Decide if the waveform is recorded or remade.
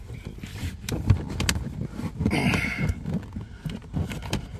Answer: recorded